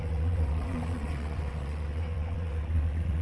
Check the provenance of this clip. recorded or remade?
remade